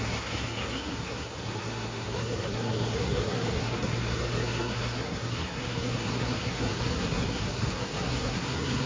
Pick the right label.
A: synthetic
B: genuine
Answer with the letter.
A